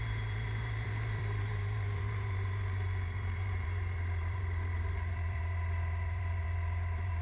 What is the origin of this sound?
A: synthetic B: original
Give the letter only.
A